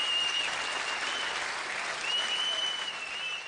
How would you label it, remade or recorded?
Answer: recorded